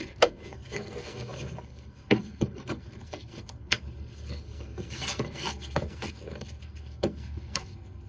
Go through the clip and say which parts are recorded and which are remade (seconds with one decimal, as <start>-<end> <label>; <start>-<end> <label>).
0.0-8.1 remade